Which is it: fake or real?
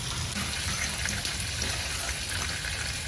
real